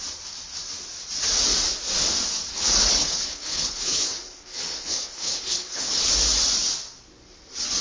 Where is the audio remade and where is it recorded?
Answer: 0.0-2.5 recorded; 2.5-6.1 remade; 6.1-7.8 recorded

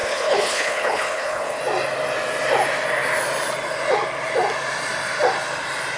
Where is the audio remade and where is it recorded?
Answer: 0.0-1.6 remade; 1.6-6.0 recorded

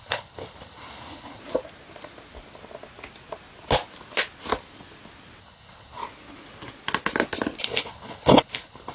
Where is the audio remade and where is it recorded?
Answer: 0.0-1.4 remade; 1.4-5.4 recorded; 5.4-6.0 remade; 6.0-7.6 recorded; 7.6-8.9 remade

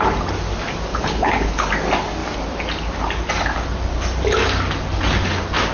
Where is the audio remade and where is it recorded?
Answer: 0.0-0.9 recorded; 0.9-1.7 remade; 1.7-5.7 recorded

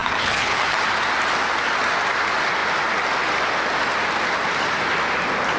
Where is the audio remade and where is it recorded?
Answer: 0.0-0.8 remade; 0.8-5.6 recorded

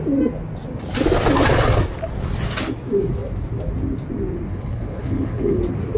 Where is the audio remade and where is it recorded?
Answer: 0.0-4.5 recorded; 4.5-5.6 remade; 5.6-6.0 recorded

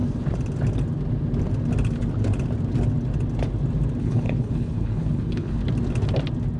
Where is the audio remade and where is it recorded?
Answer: 0.0-4.0 recorded; 4.0-5.6 remade; 5.6-6.6 recorded

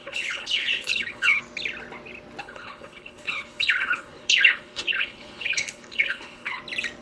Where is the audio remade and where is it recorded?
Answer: 0.0-1.4 remade; 1.4-2.4 recorded; 2.4-6.6 remade; 6.6-7.0 recorded